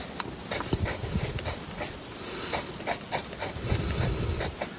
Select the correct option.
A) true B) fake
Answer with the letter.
A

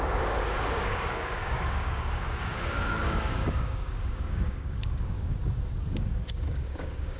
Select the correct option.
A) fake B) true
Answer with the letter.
A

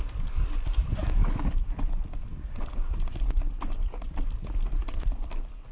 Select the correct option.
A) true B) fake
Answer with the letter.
A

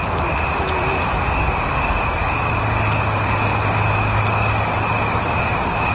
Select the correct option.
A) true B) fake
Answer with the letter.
A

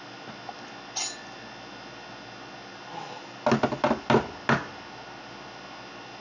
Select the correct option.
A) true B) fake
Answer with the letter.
A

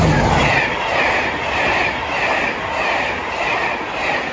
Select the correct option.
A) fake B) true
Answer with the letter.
B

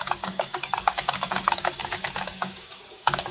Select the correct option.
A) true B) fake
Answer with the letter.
B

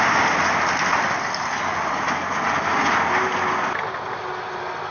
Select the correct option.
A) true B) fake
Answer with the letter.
A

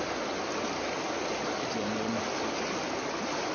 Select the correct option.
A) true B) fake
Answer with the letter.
A